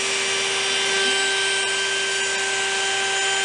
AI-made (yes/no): no